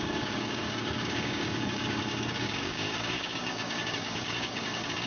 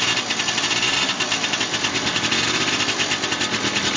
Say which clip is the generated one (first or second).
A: first